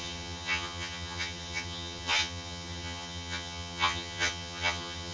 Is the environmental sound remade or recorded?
remade